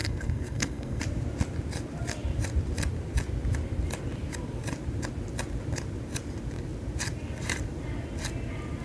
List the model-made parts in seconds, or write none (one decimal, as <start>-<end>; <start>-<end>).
0.0-1.0